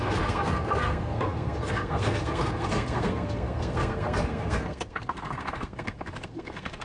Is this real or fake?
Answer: fake